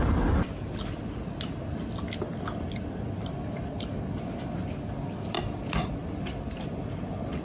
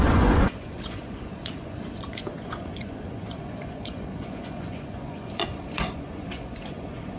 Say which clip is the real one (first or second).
first